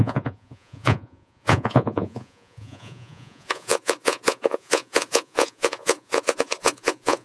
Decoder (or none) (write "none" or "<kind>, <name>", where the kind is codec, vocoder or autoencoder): vocoder, Vocos